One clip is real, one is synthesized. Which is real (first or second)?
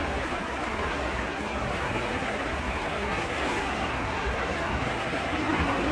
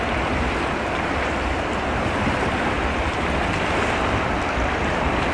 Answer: second